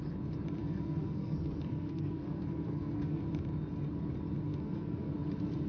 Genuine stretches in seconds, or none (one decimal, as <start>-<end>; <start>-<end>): 0.0-0.6; 3.2-4.5; 5.1-5.7

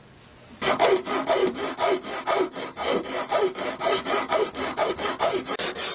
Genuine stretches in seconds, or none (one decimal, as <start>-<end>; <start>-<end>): 0.0-5.9

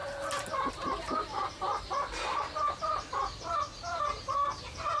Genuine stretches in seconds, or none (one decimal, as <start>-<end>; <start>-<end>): 0.0-0.7

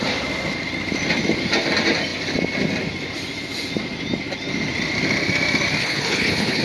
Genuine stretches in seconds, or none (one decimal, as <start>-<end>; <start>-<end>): 0.0-5.8